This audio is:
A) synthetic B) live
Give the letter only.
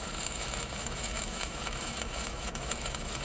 A